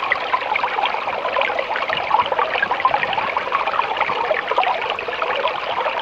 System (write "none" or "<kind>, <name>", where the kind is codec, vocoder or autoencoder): none